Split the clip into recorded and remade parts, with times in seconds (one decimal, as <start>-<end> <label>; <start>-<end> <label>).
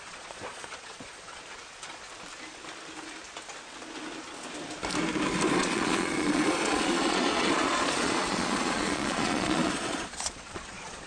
0.0-1.4 remade; 1.4-5.6 recorded; 5.6-11.1 remade